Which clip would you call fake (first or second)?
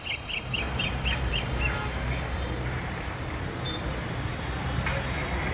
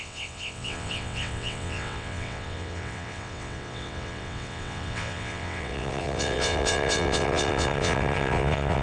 second